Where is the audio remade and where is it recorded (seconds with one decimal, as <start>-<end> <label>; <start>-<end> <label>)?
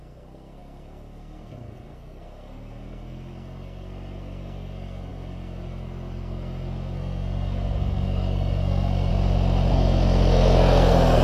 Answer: 0.0-9.1 remade; 9.1-9.7 recorded; 9.7-11.2 remade